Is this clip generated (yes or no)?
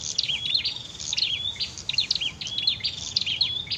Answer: no